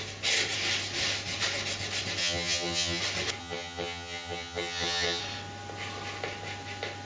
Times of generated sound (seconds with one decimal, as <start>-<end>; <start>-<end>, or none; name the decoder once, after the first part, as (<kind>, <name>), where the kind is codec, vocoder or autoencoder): 2.2-3.0 (vocoder, HiFi-GAN); 3.4-5.2